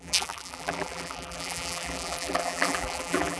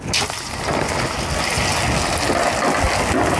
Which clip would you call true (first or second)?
second